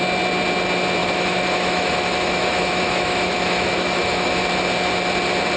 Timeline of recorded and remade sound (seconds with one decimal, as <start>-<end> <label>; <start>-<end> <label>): 0.0-1.0 recorded; 1.0-4.4 remade; 4.4-5.6 recorded